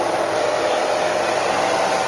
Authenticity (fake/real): real